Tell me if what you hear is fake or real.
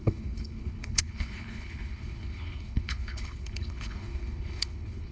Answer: fake